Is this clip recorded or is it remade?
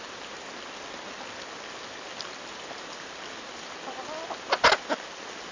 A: recorded